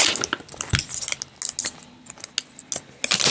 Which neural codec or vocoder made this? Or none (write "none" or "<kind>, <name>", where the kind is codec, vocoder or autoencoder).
none